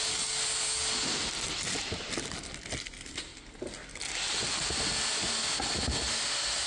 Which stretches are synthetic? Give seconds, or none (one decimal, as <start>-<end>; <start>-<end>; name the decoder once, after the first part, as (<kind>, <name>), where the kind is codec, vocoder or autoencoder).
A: none